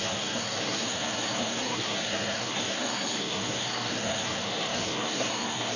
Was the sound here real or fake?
fake